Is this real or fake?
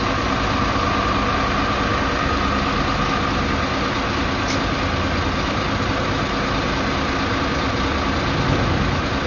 real